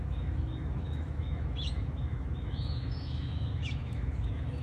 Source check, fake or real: fake